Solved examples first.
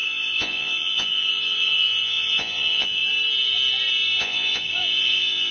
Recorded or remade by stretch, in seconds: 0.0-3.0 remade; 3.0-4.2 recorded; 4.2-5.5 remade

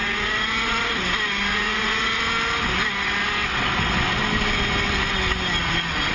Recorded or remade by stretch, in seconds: 0.0-0.9 remade; 0.9-1.5 recorded; 1.5-2.2 remade; 2.2-6.1 recorded

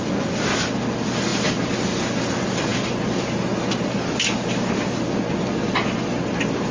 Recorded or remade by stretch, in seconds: 0.0-6.7 recorded

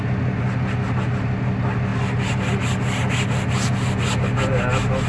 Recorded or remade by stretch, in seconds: 0.0-5.1 recorded